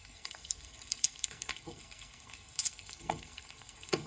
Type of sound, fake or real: fake